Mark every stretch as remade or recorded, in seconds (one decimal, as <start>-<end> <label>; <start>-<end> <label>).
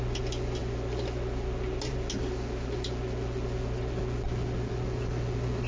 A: 0.0-5.7 recorded